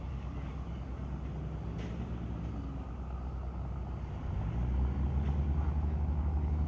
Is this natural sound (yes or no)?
yes